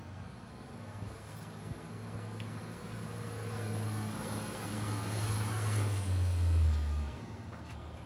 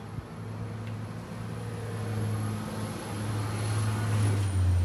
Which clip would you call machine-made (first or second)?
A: first